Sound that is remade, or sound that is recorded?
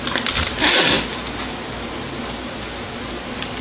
recorded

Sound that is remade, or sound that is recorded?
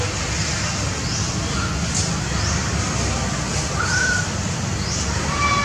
recorded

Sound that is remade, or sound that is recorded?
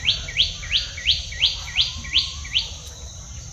recorded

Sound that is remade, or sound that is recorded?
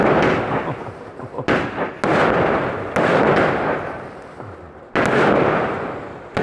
recorded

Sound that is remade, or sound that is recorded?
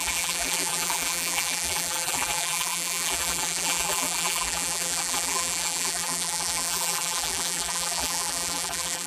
remade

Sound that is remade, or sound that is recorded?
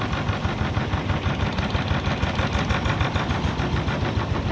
recorded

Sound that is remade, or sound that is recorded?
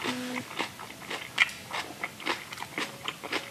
recorded